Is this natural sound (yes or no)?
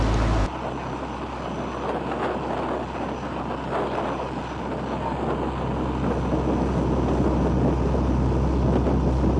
yes